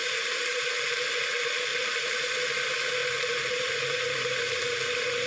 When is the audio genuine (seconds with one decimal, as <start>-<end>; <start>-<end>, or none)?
0.6-1.7; 2.4-3.0; 4.4-5.3